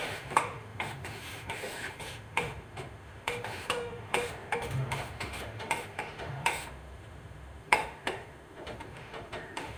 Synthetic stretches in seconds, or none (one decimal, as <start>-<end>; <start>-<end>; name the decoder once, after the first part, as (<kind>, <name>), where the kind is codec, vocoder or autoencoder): 0.0-9.8 (autoencoder, DAC-VAE)

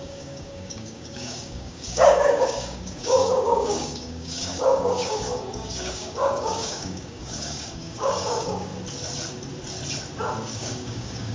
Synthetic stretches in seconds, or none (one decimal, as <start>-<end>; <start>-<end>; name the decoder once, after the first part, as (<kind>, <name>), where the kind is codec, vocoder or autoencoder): 0.0-8.7 (codec, DAC); 10.5-11.3

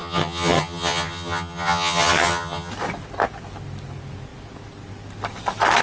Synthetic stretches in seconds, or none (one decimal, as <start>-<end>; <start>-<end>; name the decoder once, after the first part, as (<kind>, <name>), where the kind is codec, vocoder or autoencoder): 0.0-2.7 (vocoder, HiFi-GAN)

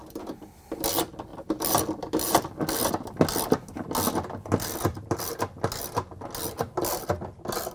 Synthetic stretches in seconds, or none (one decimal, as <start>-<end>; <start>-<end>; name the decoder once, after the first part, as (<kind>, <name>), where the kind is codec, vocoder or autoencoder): 1.3-2.9 (vocoder, BigVGAN v2); 4.9-5.4